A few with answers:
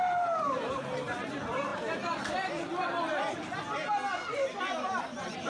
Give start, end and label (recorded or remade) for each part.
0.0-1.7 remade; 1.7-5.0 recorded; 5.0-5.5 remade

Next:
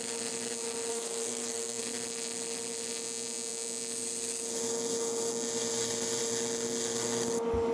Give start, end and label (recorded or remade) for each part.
0.0-0.9 recorded; 0.9-1.8 remade; 1.8-7.7 recorded

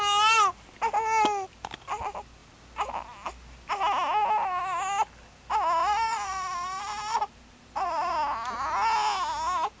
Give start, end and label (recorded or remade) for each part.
0.0-5.8 recorded; 5.8-8.1 remade; 8.1-9.8 recorded

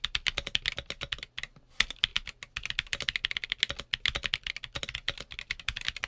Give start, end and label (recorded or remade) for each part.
0.0-6.1 recorded

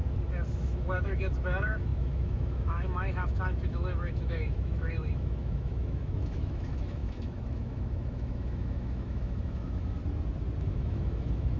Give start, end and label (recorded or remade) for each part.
0.0-0.5 recorded; 0.5-10.0 remade; 10.0-10.6 recorded; 10.6-11.6 remade